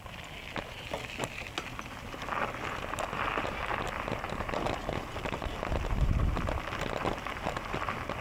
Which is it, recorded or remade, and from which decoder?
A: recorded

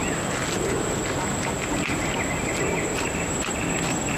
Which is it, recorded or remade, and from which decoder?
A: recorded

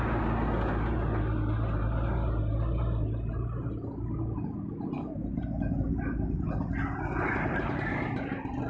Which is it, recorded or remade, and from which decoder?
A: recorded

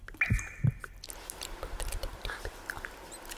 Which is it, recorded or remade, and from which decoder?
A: recorded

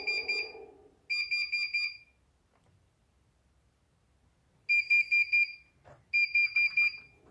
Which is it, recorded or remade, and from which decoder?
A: recorded